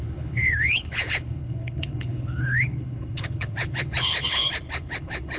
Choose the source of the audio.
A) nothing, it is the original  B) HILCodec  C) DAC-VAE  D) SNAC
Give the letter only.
B